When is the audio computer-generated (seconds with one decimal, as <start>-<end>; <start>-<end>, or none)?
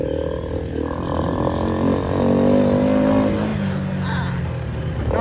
none